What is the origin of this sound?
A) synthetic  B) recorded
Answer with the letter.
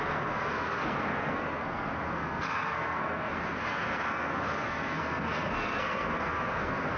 A